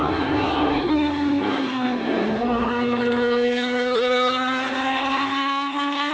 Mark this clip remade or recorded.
remade